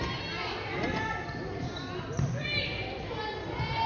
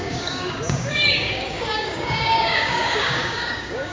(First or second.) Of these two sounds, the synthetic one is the second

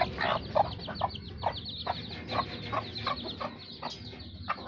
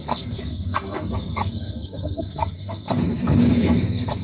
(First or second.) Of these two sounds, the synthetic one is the second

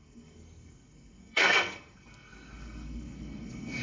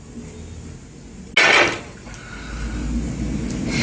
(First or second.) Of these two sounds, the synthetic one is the first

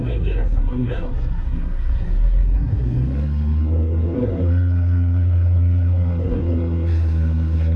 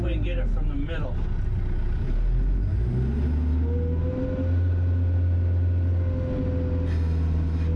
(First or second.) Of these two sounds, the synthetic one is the first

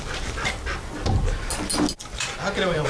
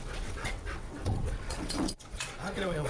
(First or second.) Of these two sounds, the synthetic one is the second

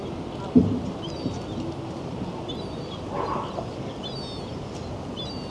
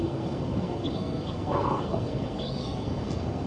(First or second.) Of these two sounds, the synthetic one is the second